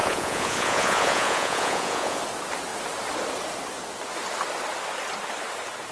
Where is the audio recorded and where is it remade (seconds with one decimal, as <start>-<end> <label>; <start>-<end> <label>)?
0.0-2.2 remade; 2.2-5.9 recorded